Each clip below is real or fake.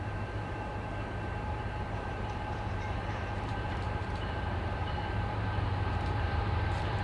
fake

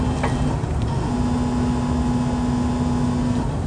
real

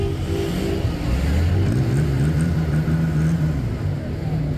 real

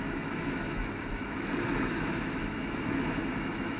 fake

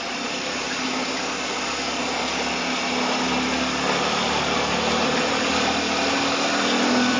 fake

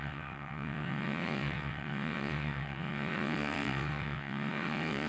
fake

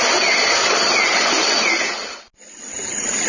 real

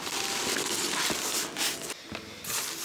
real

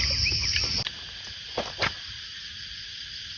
real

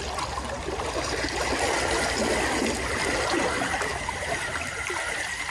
real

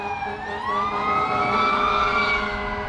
real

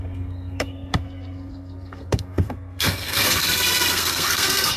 fake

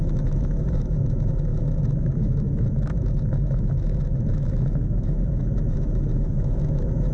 fake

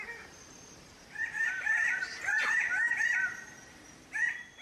real